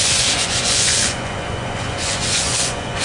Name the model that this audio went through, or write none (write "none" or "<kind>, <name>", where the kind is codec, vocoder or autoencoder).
vocoder, Vocos